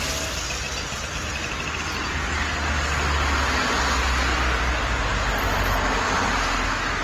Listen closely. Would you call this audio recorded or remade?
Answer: recorded